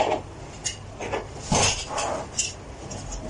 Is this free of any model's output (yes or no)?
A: yes